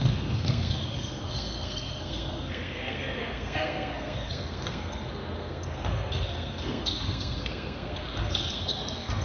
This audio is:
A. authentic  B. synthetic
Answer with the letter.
B